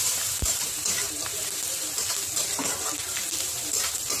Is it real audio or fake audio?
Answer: fake